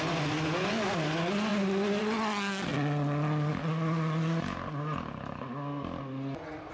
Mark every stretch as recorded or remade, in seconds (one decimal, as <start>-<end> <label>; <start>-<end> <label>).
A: 0.0-6.7 recorded